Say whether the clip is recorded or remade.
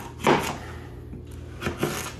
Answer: recorded